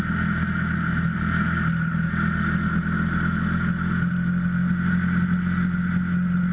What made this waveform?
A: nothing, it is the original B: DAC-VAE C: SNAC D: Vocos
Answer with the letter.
A